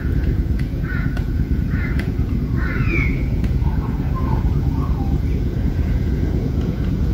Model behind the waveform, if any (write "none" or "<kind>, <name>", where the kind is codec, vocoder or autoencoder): vocoder, Vocos